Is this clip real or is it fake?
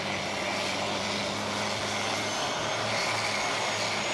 real